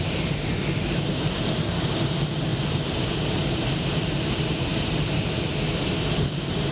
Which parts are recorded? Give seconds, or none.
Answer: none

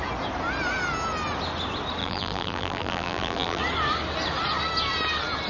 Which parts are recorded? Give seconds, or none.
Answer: 0.0-2.0; 3.6-5.5

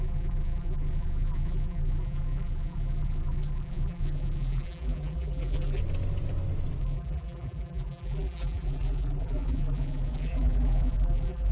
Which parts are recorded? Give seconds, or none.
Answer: 5.8-6.8